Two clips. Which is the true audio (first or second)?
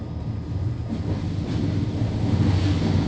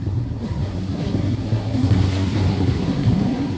first